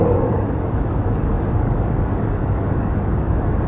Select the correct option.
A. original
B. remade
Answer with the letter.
B